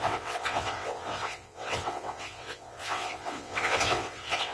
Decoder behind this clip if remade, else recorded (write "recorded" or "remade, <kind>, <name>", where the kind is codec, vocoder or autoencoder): remade, vocoder, WaveNeXt